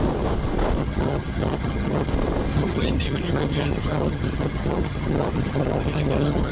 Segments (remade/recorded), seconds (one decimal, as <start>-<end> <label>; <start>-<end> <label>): 0.0-0.8 recorded; 0.8-2.1 remade; 2.1-2.5 recorded; 2.5-6.5 remade